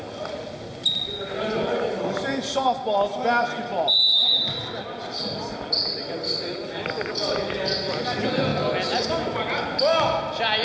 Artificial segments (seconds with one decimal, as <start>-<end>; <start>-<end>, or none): none